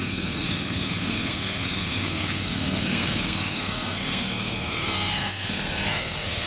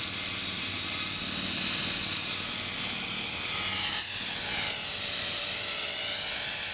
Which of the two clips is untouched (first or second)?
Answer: second